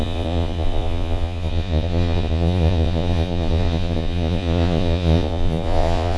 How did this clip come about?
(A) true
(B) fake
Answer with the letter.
B